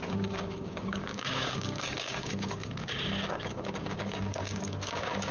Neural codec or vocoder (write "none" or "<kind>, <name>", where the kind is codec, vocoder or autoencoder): codec, DAC